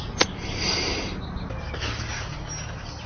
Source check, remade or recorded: recorded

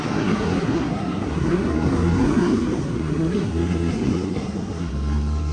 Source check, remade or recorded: remade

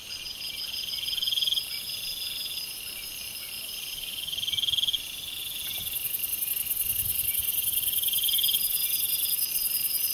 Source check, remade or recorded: recorded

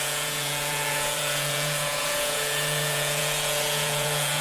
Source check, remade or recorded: remade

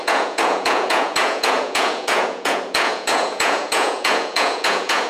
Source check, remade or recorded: remade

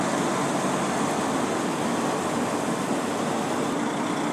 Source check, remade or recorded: recorded